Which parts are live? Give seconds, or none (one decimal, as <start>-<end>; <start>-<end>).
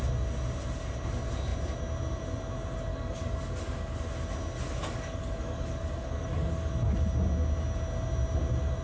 0.0-2.9; 4.0-4.8; 6.7-8.8